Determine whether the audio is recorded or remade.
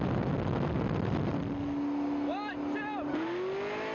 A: recorded